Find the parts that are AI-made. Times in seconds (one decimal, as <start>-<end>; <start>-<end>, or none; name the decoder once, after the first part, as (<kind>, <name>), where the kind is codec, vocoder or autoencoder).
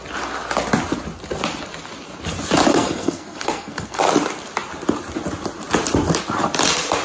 2.7-4.0 (codec, SNAC)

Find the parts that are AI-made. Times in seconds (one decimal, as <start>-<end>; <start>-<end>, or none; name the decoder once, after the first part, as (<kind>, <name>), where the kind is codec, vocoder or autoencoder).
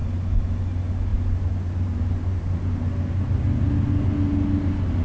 none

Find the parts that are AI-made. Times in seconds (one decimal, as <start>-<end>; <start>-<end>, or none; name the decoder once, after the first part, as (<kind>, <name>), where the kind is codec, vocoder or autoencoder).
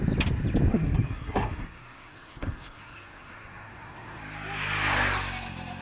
0.7-4.2 (codec, SNAC)